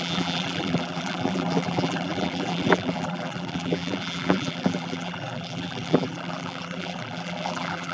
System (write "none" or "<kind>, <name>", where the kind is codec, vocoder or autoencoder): vocoder, BigVGAN v2